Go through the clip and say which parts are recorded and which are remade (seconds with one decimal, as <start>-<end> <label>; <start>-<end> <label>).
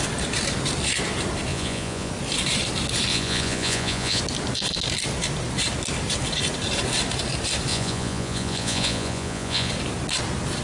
0.0-1.5 recorded; 1.5-2.1 remade; 2.1-3.1 recorded; 3.1-4.2 remade; 4.2-7.7 recorded; 7.7-9.7 remade; 9.7-10.6 recorded